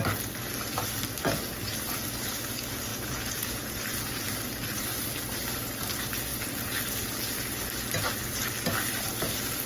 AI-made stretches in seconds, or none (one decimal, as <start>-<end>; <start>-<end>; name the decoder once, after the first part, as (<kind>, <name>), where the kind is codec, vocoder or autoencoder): 2.9-3.8 (vocoder, Vocos)